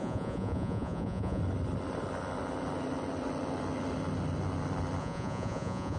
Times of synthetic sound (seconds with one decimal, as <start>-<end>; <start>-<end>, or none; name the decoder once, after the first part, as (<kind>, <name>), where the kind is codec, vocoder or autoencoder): 0.0-1.4 (vocoder, Vocos); 5.0-6.0